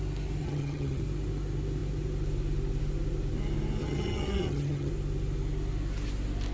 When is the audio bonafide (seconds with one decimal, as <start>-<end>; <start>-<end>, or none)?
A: 0.0-0.4; 1.0-3.8; 4.9-6.5